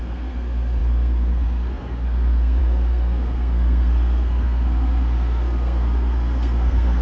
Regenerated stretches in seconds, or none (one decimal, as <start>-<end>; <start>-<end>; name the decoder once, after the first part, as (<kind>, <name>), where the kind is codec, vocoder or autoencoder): 0.0-7.0 (codec, SNAC)